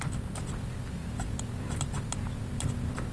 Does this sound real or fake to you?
real